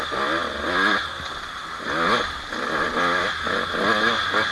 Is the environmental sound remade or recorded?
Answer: recorded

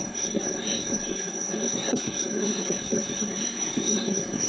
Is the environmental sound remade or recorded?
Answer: remade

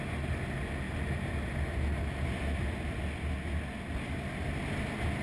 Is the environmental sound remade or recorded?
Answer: recorded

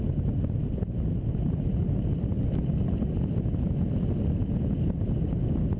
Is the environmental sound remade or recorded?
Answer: recorded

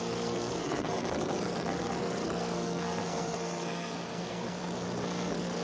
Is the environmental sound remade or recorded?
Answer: remade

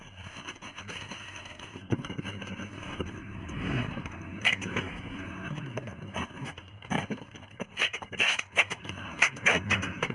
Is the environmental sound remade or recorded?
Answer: remade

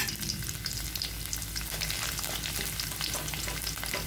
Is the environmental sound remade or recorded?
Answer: recorded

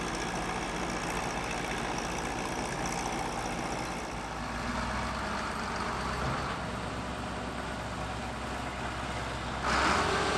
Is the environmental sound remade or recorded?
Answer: recorded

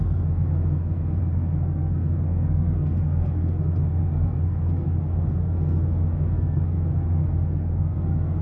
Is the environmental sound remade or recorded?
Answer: remade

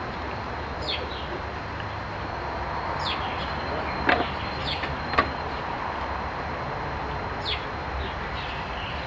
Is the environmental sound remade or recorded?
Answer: recorded